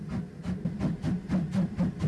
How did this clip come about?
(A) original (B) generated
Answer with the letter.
A